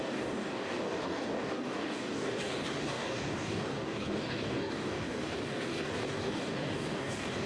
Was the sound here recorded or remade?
remade